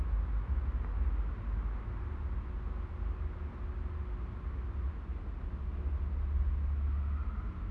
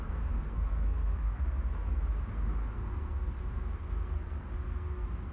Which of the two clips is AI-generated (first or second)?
second